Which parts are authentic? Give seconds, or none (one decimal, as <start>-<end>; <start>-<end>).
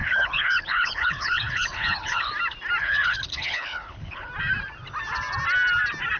2.3-2.8; 4.3-6.2